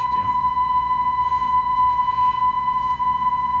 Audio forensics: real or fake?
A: fake